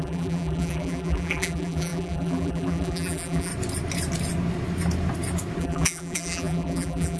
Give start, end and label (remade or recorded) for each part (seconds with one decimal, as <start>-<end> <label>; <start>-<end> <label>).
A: 0.0-3.5 remade; 3.5-5.6 recorded; 5.6-7.2 remade